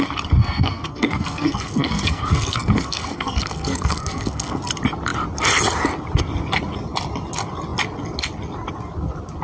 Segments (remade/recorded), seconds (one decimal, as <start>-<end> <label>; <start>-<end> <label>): 0.0-0.4 recorded; 0.4-4.6 remade; 4.6-9.4 recorded